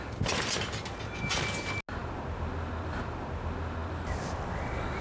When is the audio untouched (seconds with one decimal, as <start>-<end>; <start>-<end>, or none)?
0.0-5.0